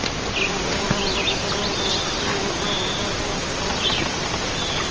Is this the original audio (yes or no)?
yes